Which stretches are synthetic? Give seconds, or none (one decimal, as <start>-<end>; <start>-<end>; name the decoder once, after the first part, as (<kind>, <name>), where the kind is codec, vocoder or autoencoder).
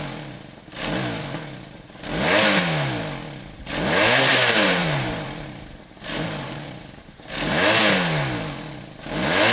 4.3-7.5 (vocoder, BigVGAN v2)